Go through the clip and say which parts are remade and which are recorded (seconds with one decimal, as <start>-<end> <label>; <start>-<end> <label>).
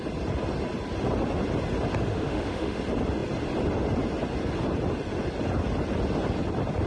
0.0-2.1 recorded; 2.1-2.8 remade; 2.8-6.9 recorded